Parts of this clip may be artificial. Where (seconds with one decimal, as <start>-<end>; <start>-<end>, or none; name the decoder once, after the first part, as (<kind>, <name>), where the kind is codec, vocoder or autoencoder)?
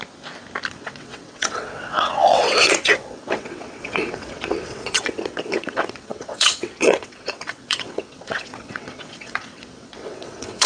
0.7-10.7 (vocoder, WaveNeXt)